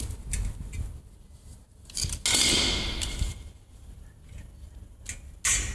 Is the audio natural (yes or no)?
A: yes